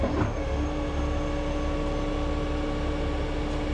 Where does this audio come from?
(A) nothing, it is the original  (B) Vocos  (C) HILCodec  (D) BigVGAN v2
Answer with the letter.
A